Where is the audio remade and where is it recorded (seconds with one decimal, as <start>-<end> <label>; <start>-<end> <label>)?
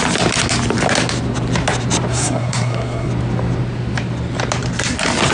0.0-2.1 recorded; 2.1-3.1 remade; 3.1-5.3 recorded